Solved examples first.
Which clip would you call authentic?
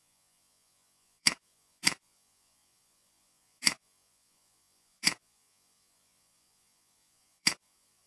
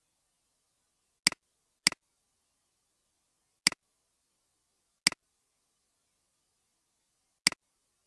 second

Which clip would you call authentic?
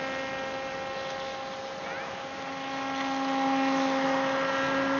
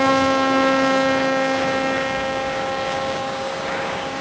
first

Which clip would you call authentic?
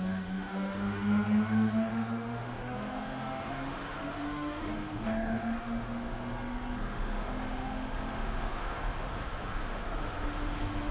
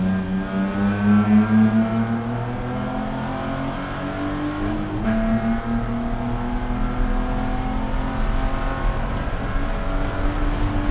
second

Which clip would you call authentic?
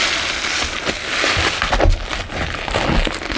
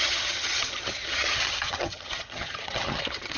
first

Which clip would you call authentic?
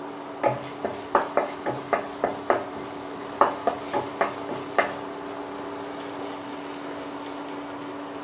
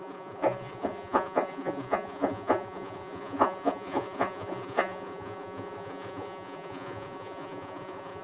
first